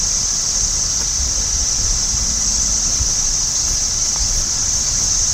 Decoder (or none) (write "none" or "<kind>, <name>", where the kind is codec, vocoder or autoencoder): none